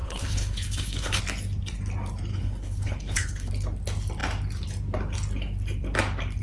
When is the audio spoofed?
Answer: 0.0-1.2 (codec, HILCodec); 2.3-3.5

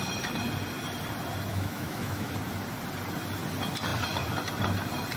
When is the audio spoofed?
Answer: 1.5-2.3 (autoencoder, DAC-VAE)

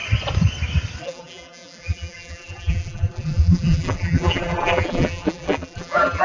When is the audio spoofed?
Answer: 1.0-6.2 (vocoder, BigVGAN v2)

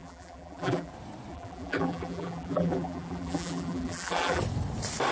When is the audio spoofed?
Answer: 0.0-0.9 (vocoder, BigVGAN v2); 1.3-4.4

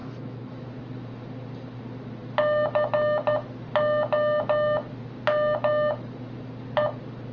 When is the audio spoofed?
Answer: 0.0-0.7 (autoencoder, DAC-VAE)

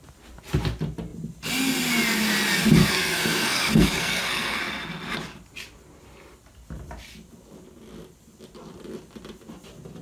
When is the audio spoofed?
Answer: 2.8-4.6 (codec, SNAC)